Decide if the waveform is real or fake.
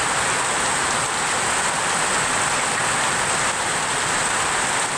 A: real